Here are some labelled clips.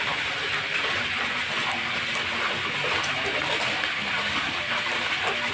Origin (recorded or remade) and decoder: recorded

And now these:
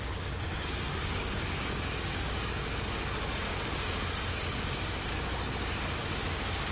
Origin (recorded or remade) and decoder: remade, codec, DAC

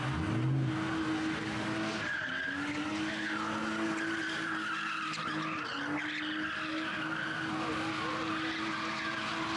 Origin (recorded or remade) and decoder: recorded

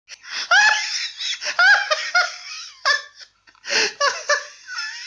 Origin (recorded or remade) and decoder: recorded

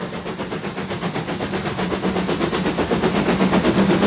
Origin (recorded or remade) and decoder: recorded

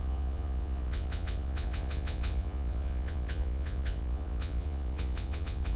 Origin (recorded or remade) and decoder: remade, vocoder, Vocos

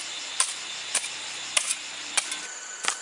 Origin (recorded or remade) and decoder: remade, vocoder, BigVGAN v2